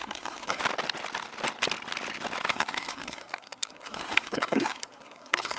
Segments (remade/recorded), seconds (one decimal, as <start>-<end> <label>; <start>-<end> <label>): 0.0-0.6 remade; 0.6-2.5 recorded; 2.5-5.6 remade